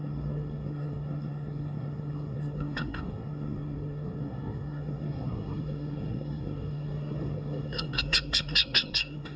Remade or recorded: remade